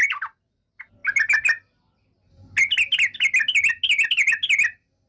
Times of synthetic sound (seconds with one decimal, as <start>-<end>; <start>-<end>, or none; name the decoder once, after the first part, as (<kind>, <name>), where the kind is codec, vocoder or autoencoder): none